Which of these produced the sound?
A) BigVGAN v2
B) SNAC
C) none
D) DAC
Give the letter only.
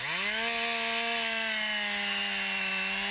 C